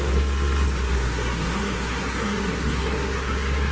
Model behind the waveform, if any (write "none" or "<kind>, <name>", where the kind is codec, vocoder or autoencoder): codec, SNAC